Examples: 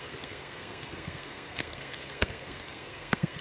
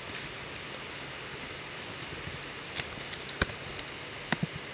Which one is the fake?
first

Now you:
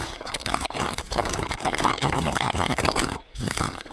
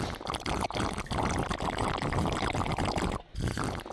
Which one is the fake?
first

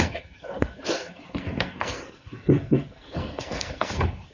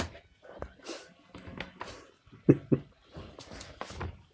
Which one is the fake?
first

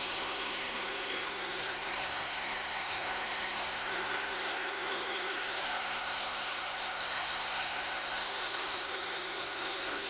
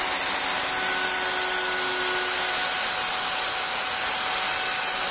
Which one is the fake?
first